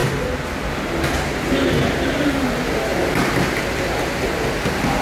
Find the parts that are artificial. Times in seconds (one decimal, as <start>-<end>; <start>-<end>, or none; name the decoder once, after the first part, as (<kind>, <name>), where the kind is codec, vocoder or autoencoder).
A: none